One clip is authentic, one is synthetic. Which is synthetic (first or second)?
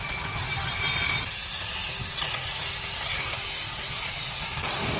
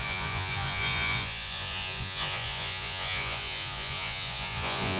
second